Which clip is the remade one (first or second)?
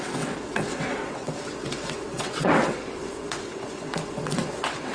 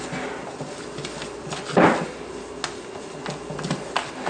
first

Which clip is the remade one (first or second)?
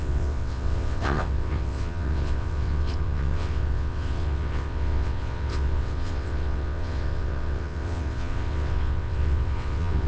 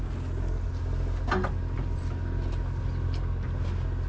first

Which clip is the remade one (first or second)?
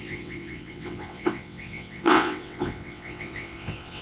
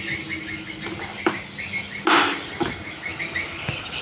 first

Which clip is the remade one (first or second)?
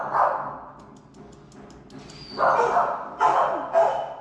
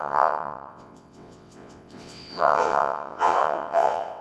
second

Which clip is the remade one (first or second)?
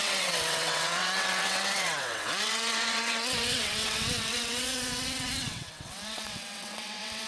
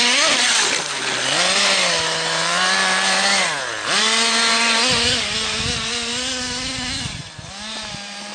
first